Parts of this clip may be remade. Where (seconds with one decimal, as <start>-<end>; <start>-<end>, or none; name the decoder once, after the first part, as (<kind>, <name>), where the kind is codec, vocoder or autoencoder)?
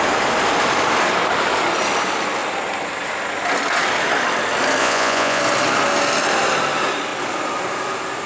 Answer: 4.8-5.4 (vocoder, Vocos)